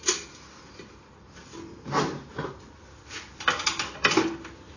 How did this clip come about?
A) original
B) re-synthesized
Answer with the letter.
A